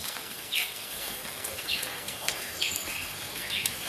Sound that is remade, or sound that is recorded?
remade